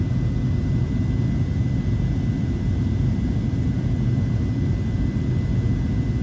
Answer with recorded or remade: recorded